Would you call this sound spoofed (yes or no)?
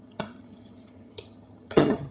yes